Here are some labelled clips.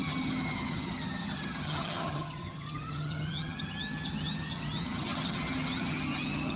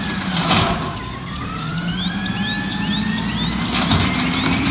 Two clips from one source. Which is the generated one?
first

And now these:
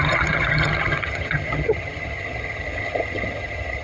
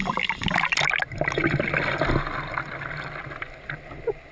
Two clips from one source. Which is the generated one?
first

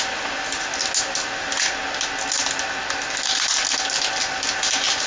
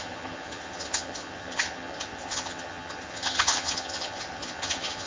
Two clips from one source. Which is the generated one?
second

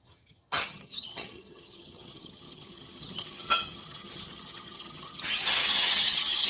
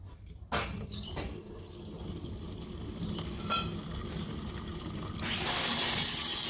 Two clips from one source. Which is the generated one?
first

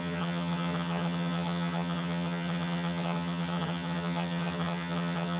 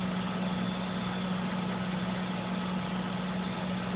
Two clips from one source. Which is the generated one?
first